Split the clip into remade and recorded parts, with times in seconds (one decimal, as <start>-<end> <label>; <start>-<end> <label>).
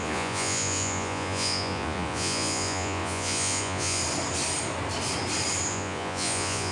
0.0-4.0 remade; 4.0-5.7 recorded; 5.7-6.7 remade